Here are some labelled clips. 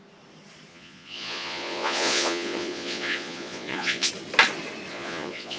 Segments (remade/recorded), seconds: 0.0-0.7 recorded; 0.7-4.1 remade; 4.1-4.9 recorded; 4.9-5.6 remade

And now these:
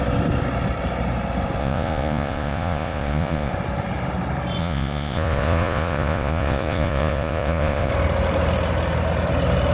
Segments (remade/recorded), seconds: 0.0-1.6 recorded; 1.6-3.5 remade; 3.5-4.6 recorded; 4.6-7.9 remade; 7.9-9.7 recorded

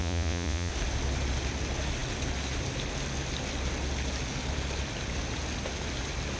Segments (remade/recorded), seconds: 0.0-0.7 remade; 0.7-6.4 recorded